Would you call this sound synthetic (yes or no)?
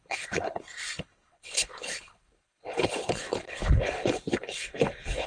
yes